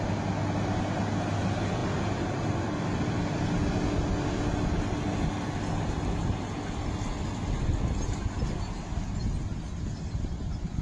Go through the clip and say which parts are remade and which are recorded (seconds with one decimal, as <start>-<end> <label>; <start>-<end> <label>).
0.0-10.8 recorded